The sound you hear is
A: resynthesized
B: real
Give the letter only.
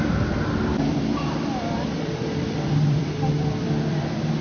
A